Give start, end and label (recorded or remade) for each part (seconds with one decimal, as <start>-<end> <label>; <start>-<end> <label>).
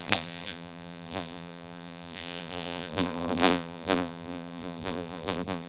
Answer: 0.0-5.7 remade